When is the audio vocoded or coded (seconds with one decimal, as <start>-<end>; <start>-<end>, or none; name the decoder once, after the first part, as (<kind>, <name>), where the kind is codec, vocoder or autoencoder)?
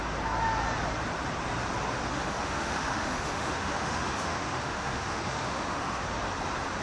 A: 2.1-6.2 (autoencoder, DAC-VAE)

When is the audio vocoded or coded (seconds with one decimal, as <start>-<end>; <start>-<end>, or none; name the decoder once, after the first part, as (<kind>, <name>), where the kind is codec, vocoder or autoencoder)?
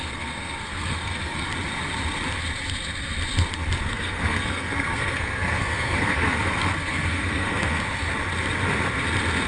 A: 0.0-1.5 (codec, SNAC); 3.9-7.8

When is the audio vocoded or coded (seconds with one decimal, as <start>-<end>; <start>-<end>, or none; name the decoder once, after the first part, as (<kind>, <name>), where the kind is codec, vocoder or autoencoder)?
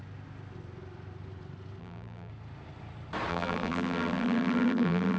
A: 1.8-2.3 (vocoder, BigVGAN v2); 3.3-5.2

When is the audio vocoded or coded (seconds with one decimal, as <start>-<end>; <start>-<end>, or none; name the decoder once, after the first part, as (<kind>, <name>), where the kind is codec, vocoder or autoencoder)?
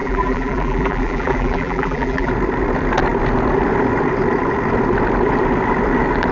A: 0.0-2.3 (vocoder, BigVGAN v2)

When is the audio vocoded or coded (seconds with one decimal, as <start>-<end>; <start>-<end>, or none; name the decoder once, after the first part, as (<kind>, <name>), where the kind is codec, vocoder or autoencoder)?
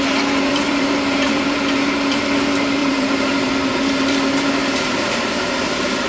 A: 0.5-1.5 (vocoder, BigVGAN v2); 2.8-3.5; 4.6-5.4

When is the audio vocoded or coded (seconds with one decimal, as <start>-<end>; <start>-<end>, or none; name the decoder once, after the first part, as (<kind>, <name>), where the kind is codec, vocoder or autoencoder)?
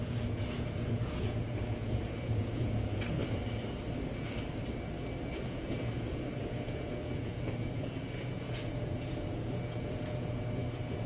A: 0.0-3.2 (vocoder, Vocos); 5.3-11.1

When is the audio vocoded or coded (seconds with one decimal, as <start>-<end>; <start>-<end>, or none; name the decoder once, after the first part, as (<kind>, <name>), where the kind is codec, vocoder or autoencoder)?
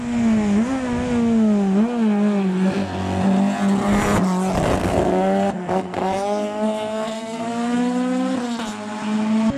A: 4.8-7.8 (codec, SNAC)